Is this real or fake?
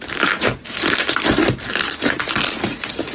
real